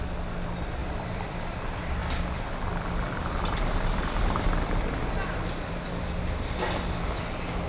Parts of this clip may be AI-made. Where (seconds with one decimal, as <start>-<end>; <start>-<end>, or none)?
0.8-1.6; 2.0-6.6